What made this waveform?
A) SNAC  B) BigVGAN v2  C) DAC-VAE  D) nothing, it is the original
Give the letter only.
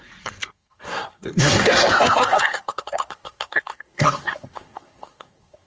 A